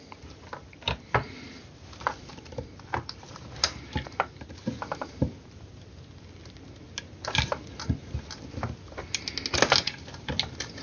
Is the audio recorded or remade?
recorded